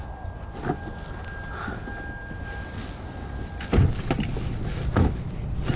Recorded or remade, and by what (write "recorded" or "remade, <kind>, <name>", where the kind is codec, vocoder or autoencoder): recorded